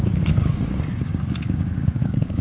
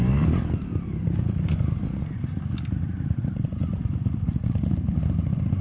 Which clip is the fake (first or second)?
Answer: first